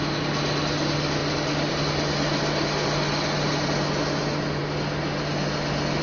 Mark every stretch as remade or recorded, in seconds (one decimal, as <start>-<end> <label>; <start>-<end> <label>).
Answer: 0.0-6.0 recorded